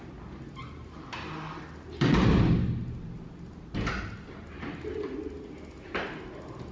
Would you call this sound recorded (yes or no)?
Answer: yes